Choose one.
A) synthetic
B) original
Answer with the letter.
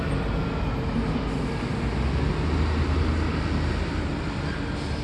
B